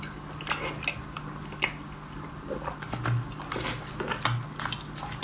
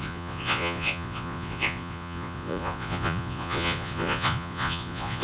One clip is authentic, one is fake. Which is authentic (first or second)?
first